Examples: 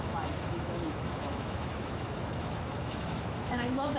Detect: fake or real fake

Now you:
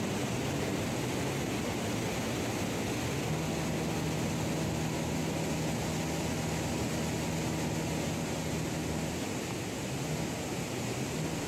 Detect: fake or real real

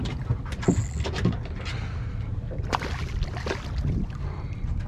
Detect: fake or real real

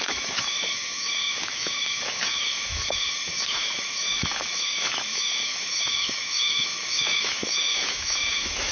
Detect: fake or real fake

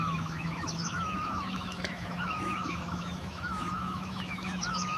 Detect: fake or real fake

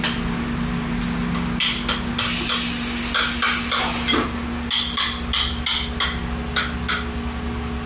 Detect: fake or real real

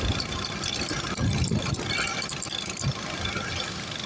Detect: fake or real real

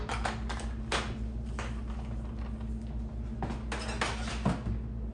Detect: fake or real real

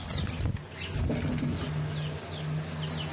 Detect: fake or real real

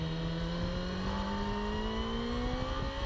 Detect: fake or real real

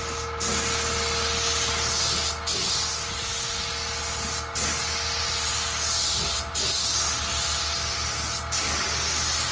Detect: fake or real real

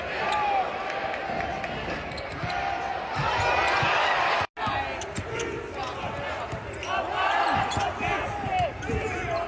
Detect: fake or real real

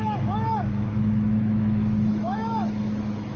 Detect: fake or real fake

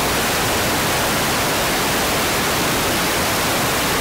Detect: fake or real real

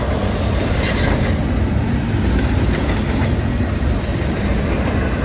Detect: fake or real real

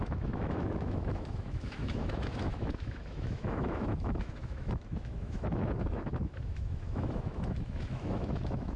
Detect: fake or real fake